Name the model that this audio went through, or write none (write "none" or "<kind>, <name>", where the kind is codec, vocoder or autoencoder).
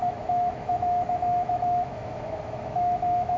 autoencoder, DAC-VAE